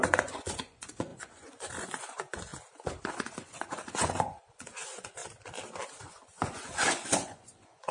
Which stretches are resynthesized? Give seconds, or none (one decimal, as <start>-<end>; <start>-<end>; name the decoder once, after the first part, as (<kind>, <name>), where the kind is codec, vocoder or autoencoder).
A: 0.0-2.5 (vocoder, Vocos); 3.1-5.2; 6.0-7.9